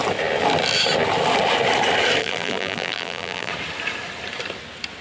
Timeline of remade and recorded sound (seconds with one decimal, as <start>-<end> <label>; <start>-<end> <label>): 0.0-2.2 recorded; 2.2-3.5 remade; 3.5-5.0 recorded